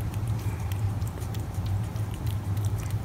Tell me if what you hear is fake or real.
fake